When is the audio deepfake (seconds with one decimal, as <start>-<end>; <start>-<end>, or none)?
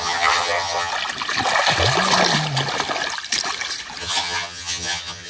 0.0-0.9; 4.0-5.3